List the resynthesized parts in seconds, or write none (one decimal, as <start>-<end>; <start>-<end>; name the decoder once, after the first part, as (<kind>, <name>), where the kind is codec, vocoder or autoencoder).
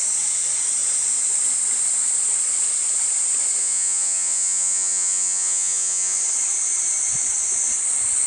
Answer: 3.6-6.2 (vocoder, Vocos)